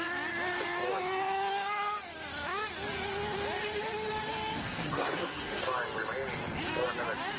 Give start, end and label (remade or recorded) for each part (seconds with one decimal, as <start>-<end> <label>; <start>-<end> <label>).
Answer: 0.0-4.6 recorded; 4.6-5.6 remade; 5.6-7.4 recorded